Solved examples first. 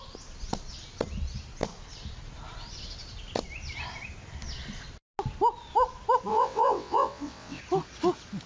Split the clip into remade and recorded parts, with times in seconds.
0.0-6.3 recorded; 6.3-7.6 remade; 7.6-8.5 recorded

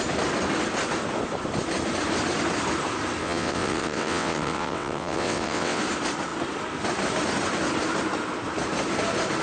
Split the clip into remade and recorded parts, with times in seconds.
0.0-3.2 recorded; 3.2-5.8 remade; 5.8-9.4 recorded